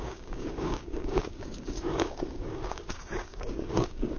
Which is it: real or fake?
fake